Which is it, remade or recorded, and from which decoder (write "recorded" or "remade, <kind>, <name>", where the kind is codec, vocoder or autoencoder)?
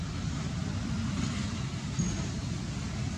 recorded